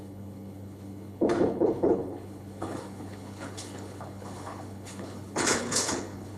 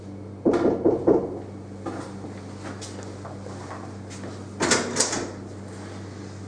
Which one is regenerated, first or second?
first